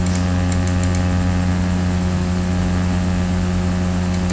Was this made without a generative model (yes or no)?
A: yes